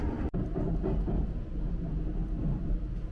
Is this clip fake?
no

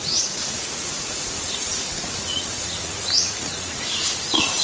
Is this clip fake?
yes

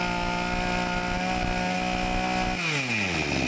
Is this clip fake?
no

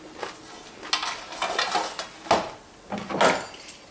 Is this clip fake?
no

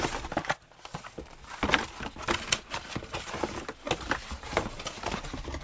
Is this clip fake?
no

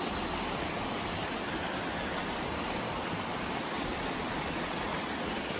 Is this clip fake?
no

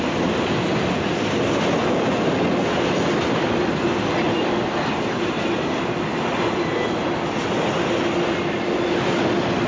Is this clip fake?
no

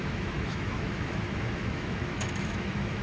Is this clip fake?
yes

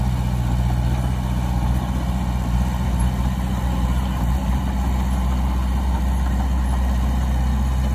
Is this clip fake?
no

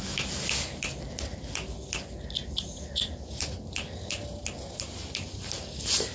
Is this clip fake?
no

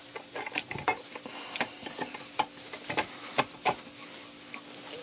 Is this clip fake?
no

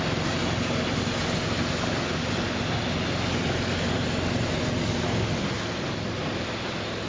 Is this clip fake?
no